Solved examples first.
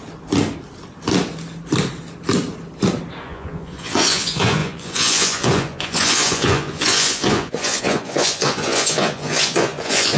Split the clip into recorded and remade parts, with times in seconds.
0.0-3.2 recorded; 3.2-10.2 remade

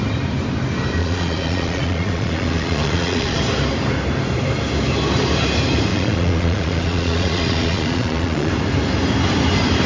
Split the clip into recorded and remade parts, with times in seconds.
0.0-1.0 recorded; 1.0-3.4 remade; 3.4-5.9 recorded; 5.9-8.5 remade; 8.5-9.9 recorded

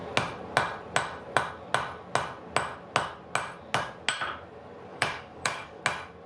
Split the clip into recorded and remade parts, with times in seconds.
0.0-4.9 recorded; 4.9-5.8 remade; 5.8-6.3 recorded

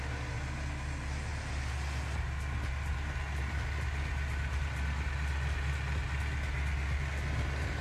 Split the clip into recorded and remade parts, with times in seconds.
0.0-7.8 recorded

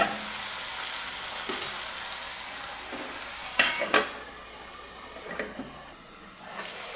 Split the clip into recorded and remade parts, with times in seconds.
0.0-3.4 recorded; 3.4-4.0 remade; 4.0-7.0 recorded

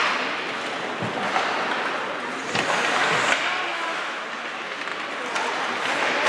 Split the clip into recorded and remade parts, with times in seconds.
0.0-3.7 recorded; 3.7-4.2 remade; 4.2-6.3 recorded

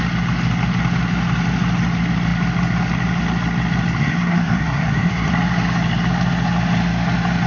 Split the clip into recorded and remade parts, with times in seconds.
0.0-4.0 recorded; 4.0-5.3 remade; 5.3-7.5 recorded